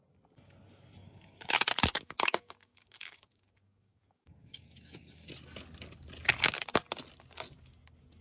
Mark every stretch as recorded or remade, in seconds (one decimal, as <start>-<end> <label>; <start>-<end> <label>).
0.0-1.0 recorded; 1.0-5.3 remade; 5.3-8.2 recorded